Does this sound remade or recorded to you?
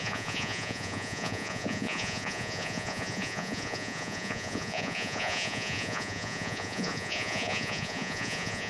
remade